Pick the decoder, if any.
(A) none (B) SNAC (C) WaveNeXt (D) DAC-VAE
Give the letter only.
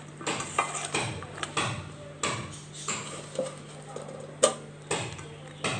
A